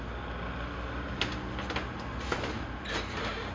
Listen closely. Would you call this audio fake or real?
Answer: real